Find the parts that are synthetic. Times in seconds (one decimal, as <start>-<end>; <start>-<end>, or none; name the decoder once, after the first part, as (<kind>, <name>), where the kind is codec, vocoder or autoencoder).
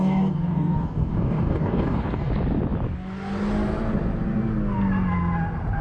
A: 0.0-2.3 (codec, DAC)